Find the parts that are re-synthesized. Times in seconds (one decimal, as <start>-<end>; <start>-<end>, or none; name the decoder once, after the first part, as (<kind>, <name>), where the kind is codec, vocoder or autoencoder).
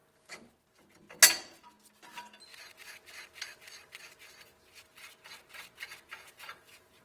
6.1-7.0 (vocoder, Vocos)